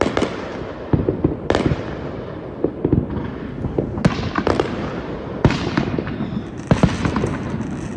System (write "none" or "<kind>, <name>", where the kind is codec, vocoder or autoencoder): none